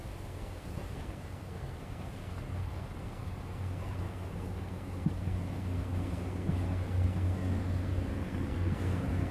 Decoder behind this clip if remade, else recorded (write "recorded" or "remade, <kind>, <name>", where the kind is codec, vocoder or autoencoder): remade, codec, SNAC